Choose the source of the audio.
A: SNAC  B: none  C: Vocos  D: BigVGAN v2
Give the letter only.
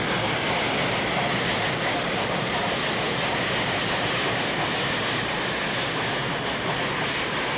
B